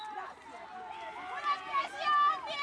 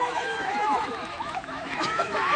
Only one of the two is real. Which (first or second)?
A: first